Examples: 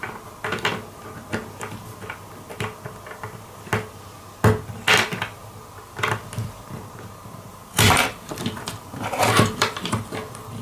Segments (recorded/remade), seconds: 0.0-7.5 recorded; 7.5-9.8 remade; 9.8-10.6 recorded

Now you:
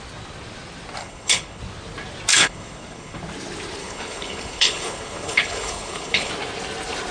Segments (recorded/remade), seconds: 0.0-1.0 recorded; 1.0-1.6 remade; 1.6-2.3 recorded; 2.3-3.2 remade; 3.2-3.8 recorded; 3.8-6.3 remade; 6.3-7.1 recorded

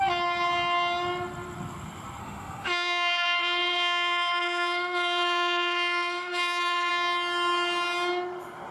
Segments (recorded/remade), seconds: 0.0-2.2 recorded; 2.2-6.9 remade; 6.9-8.7 recorded

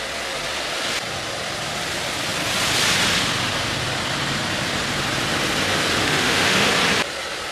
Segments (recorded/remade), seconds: 0.0-6.0 recorded; 6.0-6.7 remade; 6.7-7.5 recorded

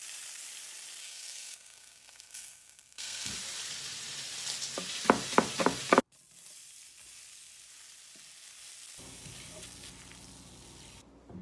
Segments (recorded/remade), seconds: 0.0-1.0 recorded; 1.0-3.3 remade; 3.3-11.4 recorded

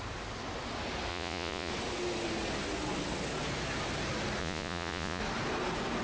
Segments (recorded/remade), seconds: 0.0-1.1 recorded; 1.1-1.7 remade; 1.7-4.4 recorded; 4.4-5.2 remade; 5.2-6.0 recorded

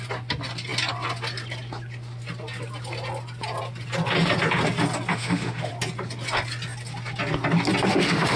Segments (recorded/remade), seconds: 0.0-5.1 recorded; 5.1-5.7 remade; 5.7-7.9 recorded; 7.9-8.4 remade